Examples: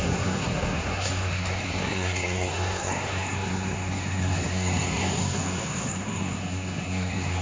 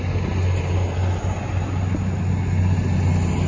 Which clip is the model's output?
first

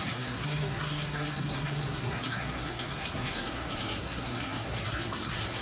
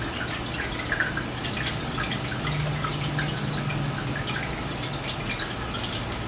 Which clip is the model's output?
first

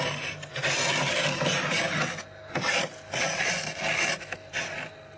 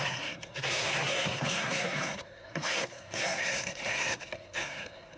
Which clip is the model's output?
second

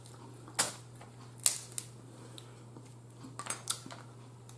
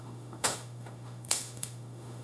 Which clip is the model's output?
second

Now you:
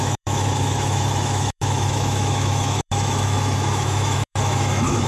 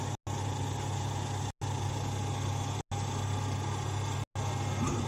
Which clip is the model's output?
first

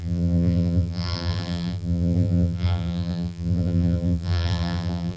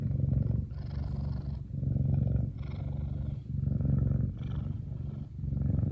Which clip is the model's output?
first